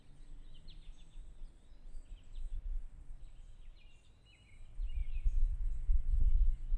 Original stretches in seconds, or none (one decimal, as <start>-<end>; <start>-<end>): 0.0-1.2; 4.2-6.8